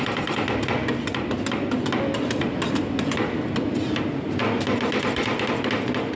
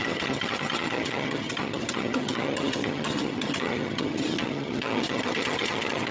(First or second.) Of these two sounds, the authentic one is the first